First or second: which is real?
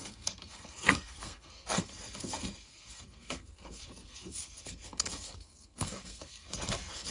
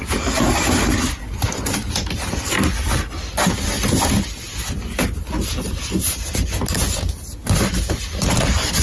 second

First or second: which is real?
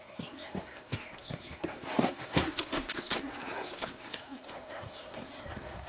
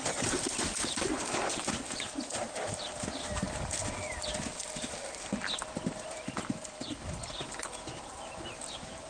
second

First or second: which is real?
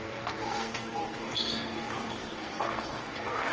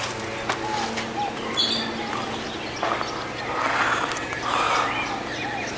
second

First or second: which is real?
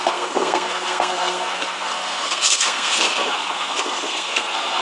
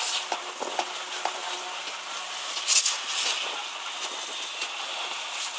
second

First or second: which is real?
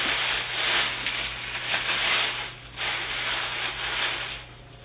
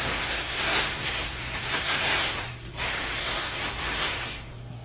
first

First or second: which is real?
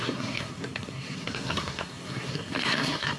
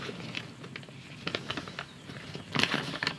second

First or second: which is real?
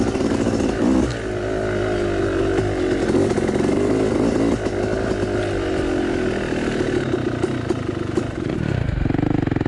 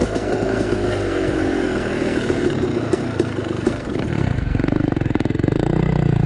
first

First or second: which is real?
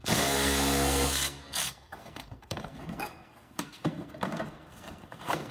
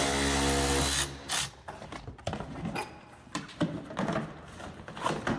second